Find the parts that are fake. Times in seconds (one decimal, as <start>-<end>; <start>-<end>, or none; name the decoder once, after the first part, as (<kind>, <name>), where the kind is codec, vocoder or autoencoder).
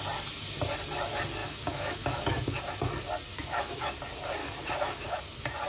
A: 1.4-2.6 (autoencoder, DAC-VAE); 3.3-3.9; 4.4-5.2